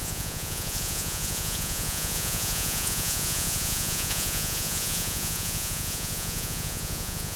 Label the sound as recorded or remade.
remade